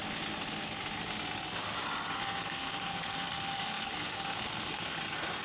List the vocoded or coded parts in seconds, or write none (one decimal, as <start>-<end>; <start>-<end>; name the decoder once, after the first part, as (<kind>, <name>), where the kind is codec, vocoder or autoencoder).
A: 2.2-5.0 (codec, SNAC)

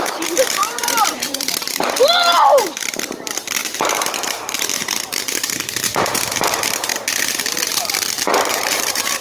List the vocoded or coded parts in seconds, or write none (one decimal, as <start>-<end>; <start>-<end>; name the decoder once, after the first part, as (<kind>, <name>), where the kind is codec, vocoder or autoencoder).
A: 0.0-6.9 (vocoder, BigVGAN v2); 8.5-9.2

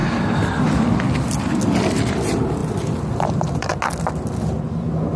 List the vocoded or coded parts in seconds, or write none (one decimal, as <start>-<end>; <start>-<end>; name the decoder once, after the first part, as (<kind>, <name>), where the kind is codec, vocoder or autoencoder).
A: 2.1-2.6 (vocoder, BigVGAN v2); 3.1-3.7

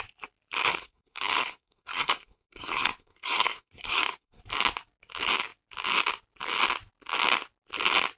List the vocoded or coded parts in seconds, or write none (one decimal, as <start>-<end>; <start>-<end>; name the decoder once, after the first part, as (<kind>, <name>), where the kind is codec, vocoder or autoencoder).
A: 0.7-4.4 (codec, SNAC)